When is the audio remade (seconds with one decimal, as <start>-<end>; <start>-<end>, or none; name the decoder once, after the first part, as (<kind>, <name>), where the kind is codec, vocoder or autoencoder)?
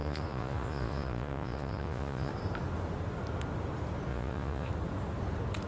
0.0-2.3 (vocoder, Vocos); 4.1-4.7